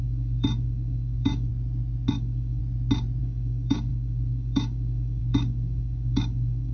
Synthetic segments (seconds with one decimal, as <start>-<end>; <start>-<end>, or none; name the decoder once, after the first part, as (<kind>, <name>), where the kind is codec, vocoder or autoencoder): 0.0-1.5 (codec, DAC); 2.1-2.6; 3.2-6.7